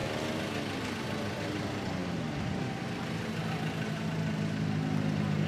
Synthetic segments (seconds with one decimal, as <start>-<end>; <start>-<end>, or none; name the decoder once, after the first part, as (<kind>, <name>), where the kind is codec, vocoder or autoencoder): none